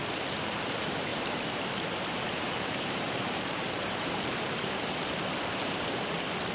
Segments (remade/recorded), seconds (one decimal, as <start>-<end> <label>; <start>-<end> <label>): 0.0-1.1 recorded; 1.1-5.0 remade; 5.0-6.5 recorded